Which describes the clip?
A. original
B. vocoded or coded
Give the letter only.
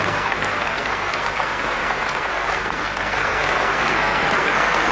B